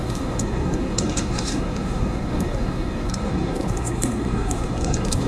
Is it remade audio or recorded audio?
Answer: remade